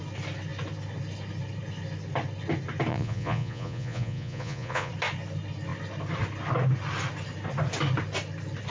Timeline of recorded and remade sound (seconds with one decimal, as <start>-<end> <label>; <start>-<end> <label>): 0.0-2.9 recorded; 2.9-4.9 remade; 4.9-8.7 recorded